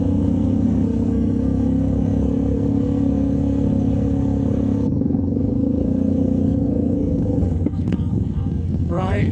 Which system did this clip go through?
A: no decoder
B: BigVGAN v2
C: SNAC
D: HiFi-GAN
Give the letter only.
C